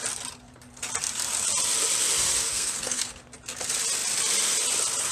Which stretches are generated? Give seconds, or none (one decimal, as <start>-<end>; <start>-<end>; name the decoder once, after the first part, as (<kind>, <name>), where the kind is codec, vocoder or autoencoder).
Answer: 2.5-3.1 (codec, SNAC)